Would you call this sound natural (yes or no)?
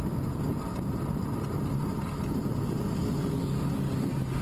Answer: yes